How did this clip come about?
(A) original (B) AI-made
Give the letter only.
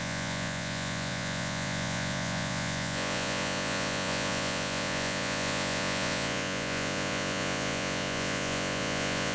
B